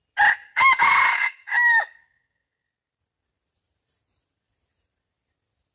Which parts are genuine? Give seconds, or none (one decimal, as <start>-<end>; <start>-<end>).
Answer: 0.0-0.4; 2.6-5.7